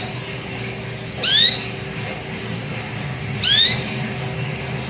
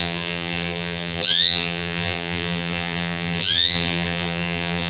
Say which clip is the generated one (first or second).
second